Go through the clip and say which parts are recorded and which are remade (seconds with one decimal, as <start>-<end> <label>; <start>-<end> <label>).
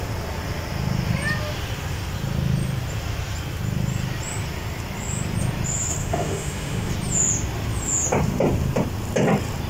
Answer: 0.0-6.0 recorded; 6.0-6.9 remade; 6.9-9.7 recorded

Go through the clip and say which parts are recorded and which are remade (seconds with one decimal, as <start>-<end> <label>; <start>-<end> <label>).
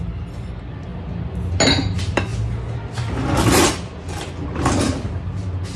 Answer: 0.0-5.8 recorded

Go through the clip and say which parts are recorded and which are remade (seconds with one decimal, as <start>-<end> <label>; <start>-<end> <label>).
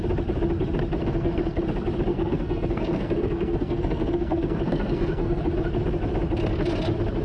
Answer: 0.0-1.0 recorded; 1.0-1.6 remade; 1.6-2.1 recorded; 2.1-5.4 remade; 5.4-7.2 recorded